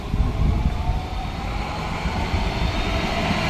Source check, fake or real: real